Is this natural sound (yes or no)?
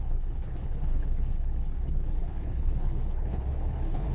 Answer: no